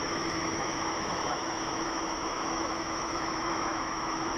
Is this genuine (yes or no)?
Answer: no